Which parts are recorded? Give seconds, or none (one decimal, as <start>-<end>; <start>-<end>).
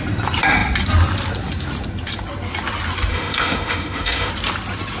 0.0-3.1; 4.3-5.0